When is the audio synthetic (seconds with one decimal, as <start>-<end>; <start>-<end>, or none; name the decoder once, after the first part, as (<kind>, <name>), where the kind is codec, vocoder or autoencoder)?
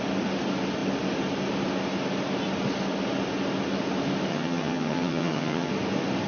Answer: 4.3-5.7 (vocoder, HiFi-GAN)